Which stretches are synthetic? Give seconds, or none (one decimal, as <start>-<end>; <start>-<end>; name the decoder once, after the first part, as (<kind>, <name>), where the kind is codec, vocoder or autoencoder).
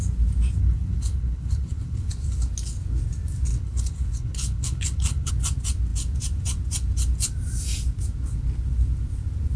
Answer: 0.6-2.1 (codec, HILCodec); 3.5-5.3